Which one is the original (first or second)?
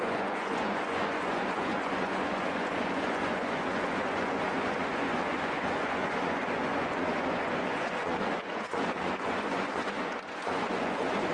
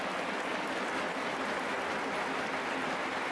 second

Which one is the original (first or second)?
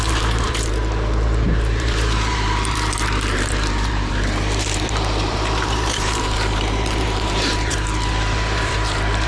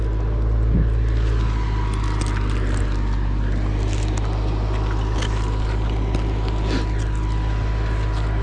second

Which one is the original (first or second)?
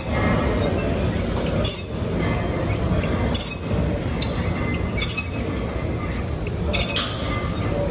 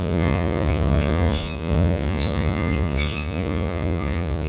first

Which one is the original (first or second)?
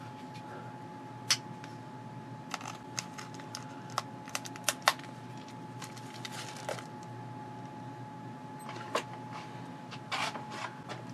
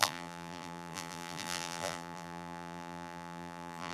first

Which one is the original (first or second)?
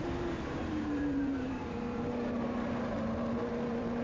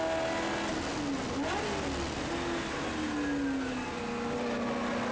second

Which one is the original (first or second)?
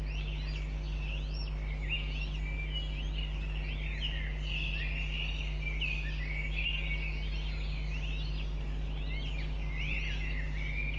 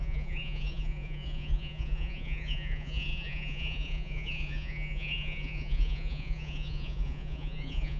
first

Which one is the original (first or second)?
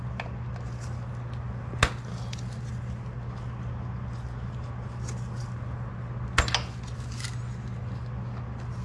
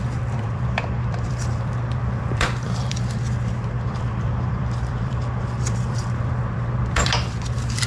first